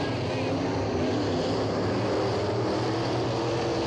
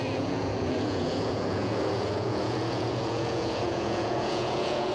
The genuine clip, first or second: first